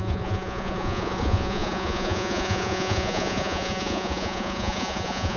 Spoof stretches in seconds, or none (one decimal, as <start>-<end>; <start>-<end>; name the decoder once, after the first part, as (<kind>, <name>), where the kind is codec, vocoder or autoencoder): 0.0-5.4 (vocoder, Vocos)